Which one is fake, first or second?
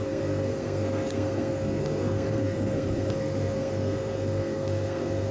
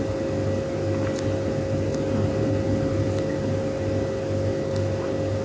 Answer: first